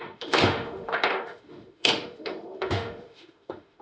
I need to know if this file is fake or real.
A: fake